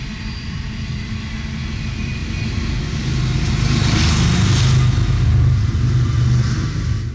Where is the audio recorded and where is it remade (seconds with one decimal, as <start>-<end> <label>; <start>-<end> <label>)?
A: 0.0-7.1 recorded